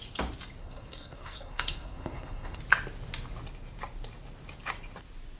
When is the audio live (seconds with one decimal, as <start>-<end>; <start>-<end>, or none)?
0.0-0.6; 2.6-5.4